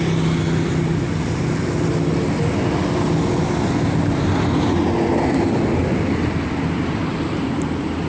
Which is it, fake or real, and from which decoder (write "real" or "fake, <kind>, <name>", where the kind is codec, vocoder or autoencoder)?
real